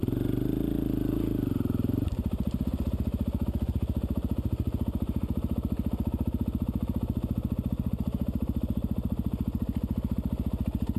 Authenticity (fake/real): real